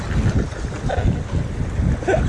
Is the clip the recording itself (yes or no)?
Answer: yes